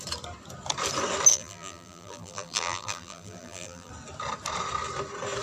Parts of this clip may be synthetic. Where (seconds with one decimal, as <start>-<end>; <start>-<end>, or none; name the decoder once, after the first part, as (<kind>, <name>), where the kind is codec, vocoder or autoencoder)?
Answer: 1.3-3.9 (vocoder, BigVGAN v2)